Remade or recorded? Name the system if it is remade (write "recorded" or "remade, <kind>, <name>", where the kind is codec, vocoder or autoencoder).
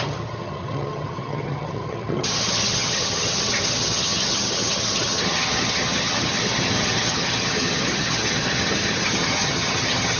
remade, vocoder, HiFi-GAN